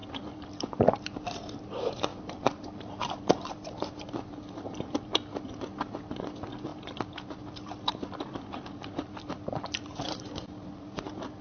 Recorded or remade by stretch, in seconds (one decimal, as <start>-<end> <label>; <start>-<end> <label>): 0.0-0.7 remade; 0.7-2.1 recorded; 2.1-5.4 remade; 5.4-6.7 recorded; 6.7-11.4 remade